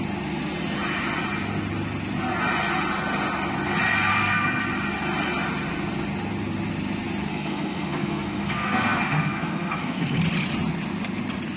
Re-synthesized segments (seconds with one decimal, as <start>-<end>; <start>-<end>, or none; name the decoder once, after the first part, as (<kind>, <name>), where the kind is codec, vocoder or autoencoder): 4.1-4.6 (codec, SNAC); 7.3-10.2